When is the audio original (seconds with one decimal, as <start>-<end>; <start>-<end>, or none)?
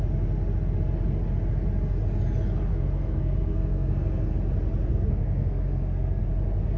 0.0-2.7; 4.3-4.9; 6.3-6.8